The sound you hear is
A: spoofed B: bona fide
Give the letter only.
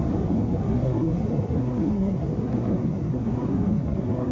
A